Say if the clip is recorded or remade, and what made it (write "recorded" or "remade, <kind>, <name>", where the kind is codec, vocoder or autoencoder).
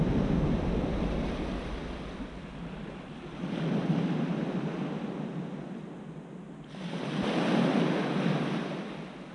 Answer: recorded